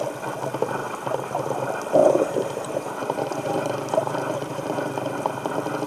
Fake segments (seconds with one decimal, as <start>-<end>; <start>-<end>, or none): 0.8-1.5; 2.0-5.5